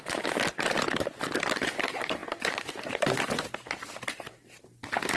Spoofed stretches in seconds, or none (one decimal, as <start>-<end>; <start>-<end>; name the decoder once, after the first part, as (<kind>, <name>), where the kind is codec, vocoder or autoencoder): none